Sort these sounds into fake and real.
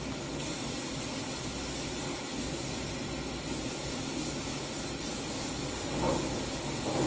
real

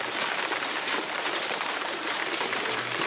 real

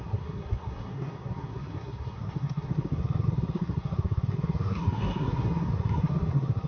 fake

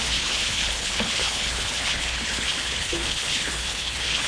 fake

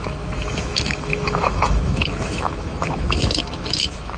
fake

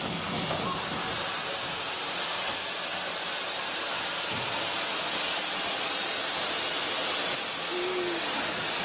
real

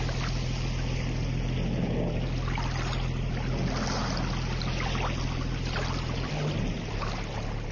real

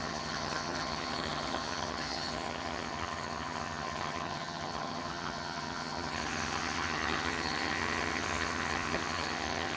fake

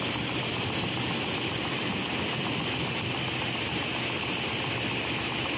real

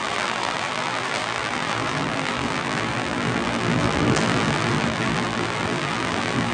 fake